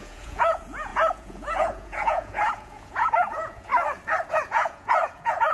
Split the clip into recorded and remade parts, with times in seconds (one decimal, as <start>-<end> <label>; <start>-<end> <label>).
0.0-3.7 remade; 3.7-4.3 recorded; 4.3-5.5 remade